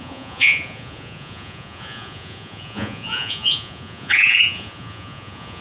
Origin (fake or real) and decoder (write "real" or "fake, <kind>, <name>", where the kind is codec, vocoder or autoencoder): fake, vocoder, Vocos